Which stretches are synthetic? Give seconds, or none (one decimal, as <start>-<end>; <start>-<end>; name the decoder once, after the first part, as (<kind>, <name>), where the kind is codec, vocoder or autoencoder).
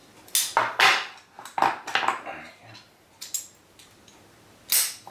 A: none